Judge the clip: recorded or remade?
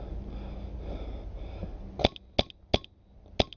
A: recorded